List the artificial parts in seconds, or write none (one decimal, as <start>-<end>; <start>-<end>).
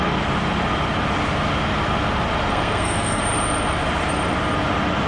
2.5-3.2